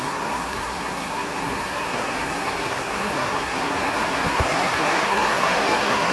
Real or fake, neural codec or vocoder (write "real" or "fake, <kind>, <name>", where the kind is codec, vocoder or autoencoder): fake, codec, SNAC